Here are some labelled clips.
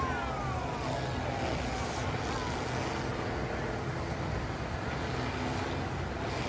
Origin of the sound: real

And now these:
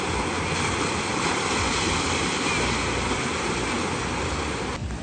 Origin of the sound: real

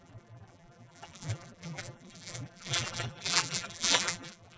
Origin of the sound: fake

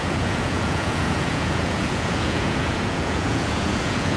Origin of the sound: fake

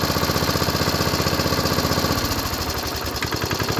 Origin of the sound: real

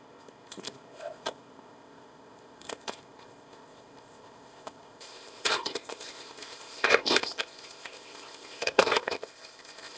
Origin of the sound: fake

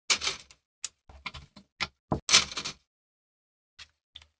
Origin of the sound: real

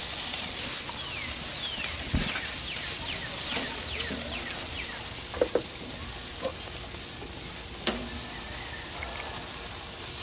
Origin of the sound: real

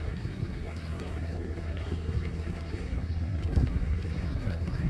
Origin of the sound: fake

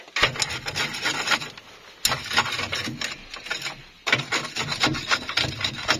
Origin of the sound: real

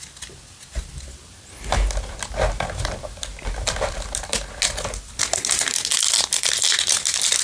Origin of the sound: real